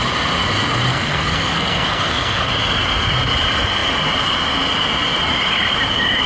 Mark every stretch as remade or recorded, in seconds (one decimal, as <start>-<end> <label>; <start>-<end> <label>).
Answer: 0.0-0.9 recorded; 0.9-2.5 remade; 2.5-6.3 recorded